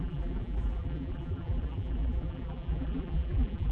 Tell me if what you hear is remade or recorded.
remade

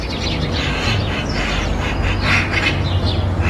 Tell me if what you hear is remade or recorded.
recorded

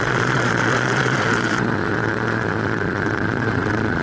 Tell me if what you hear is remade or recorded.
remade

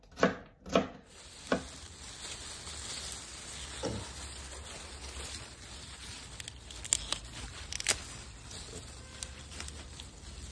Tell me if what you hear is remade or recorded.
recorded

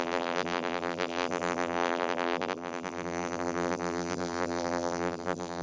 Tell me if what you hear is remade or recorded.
remade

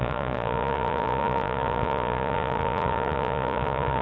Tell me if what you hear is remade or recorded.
remade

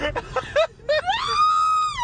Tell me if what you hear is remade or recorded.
recorded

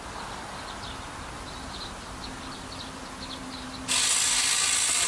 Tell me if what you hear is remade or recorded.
recorded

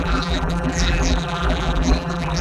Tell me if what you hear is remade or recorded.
remade